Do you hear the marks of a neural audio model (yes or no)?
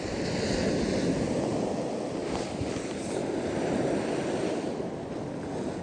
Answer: no